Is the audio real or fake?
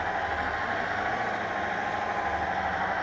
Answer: real